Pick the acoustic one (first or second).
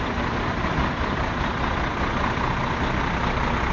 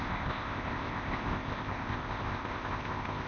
first